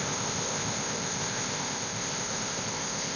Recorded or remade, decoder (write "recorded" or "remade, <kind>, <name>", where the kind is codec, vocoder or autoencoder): remade, codec, ZipCodec